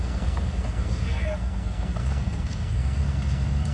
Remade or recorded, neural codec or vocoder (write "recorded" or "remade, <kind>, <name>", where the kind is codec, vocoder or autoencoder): remade, codec, SNAC